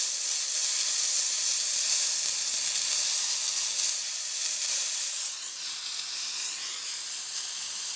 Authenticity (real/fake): real